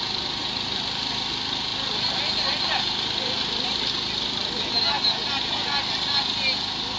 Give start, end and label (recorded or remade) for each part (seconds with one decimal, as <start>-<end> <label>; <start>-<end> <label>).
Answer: 0.0-7.0 recorded